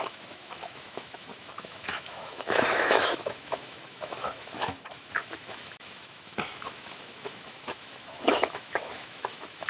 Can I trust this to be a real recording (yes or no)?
no